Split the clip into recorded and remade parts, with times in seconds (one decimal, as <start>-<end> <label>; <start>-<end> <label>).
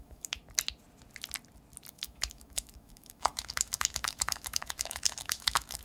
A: 0.0-0.4 remade; 0.4-1.9 recorded; 1.9-5.8 remade